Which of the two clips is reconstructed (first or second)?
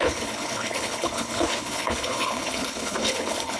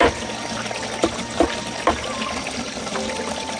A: first